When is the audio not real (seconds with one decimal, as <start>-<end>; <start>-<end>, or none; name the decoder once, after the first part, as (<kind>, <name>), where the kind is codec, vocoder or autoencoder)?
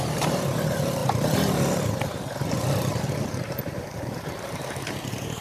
0.0-5.4 (vocoder, BigVGAN v2)